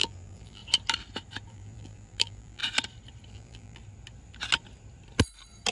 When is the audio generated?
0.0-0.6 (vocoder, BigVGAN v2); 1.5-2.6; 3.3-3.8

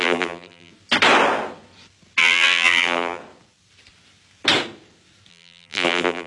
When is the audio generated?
0.0-0.7 (vocoder, BigVGAN v2); 2.2-3.2; 5.3-6.3

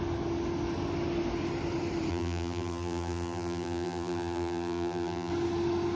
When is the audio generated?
2.1-5.3 (vocoder, BigVGAN v2)

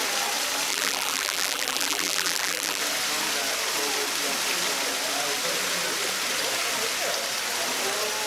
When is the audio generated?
0.7-2.8 (vocoder, BigVGAN v2)

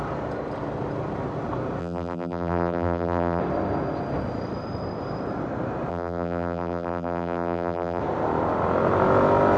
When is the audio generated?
1.8-3.4 (vocoder, BigVGAN v2); 5.9-8.0

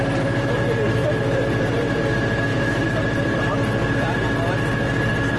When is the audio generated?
1.0-2.0 (vocoder, BigVGAN v2); 2.5-3.4

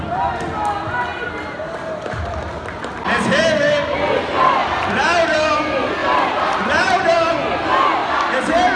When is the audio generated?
4.6-5.5 (vocoder, BigVGAN v2); 6.0-7.3

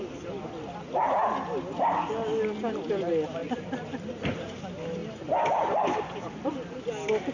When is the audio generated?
3.4-4.1 (vocoder, BigVGAN v2); 5.0-6.5